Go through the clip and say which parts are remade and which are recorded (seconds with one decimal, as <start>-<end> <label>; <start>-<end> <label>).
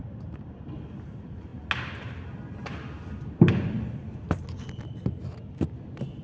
0.0-6.2 recorded